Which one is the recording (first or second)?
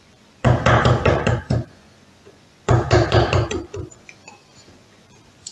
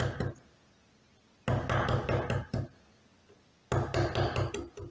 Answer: second